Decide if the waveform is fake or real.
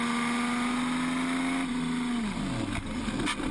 real